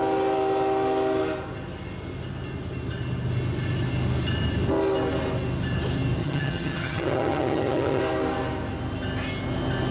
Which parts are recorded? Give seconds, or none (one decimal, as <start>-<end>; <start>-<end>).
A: 0.0-6.2; 8.0-9.9